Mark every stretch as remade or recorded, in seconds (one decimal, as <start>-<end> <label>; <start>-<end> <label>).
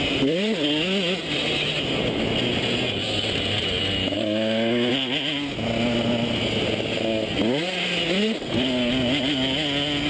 0.0-4.0 recorded; 4.0-4.9 remade; 4.9-10.1 recorded